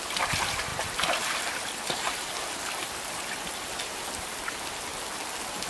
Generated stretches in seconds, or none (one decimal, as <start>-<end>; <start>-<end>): none